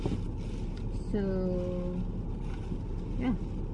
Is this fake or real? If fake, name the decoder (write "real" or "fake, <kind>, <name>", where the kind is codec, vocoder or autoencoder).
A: real